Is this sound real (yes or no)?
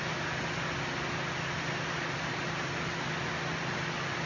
yes